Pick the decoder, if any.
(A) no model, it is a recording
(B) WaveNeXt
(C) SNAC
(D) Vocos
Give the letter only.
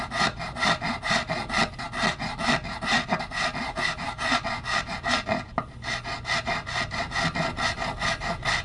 A